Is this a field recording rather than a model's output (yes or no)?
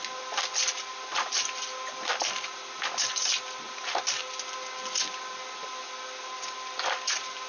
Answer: yes